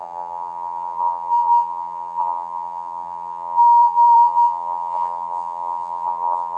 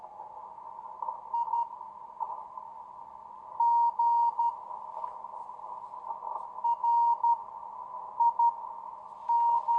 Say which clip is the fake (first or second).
first